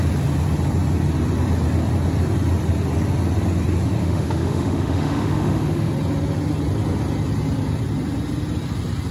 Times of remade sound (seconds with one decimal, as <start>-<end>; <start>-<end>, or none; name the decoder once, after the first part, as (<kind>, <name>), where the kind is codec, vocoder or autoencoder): 4.0-5.9 (autoencoder, DAC-VAE)